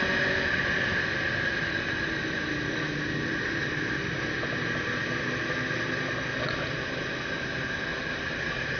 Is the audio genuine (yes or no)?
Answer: yes